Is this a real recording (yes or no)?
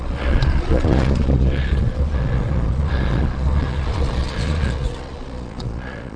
no